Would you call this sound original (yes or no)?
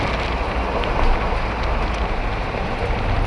yes